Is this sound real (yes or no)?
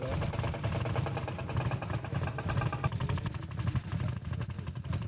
yes